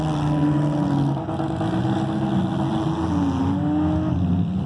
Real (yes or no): yes